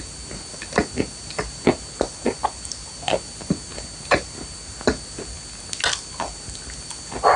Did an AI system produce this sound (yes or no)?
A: no